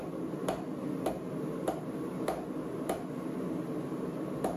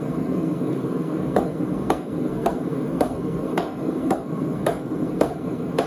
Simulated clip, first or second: second